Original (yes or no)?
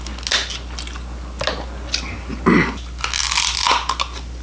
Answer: yes